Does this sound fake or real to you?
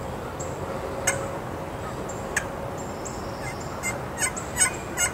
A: real